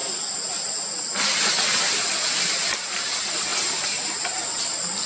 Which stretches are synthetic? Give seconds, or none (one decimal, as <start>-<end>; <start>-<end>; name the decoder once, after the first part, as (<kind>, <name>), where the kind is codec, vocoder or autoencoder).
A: none